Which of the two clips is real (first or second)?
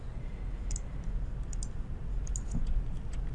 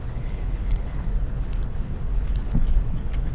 first